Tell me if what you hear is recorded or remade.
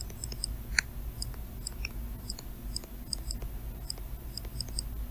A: recorded